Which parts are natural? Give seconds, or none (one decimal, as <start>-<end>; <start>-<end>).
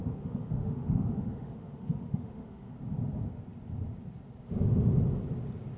2.7-5.8